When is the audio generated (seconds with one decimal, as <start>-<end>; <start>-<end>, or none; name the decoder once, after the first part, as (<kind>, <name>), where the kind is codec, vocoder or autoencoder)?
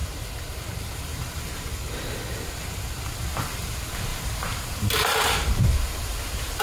0.0-1.7 (vocoder, BigVGAN v2); 4.1-6.6